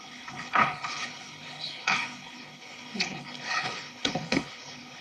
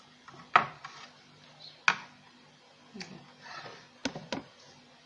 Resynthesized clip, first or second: first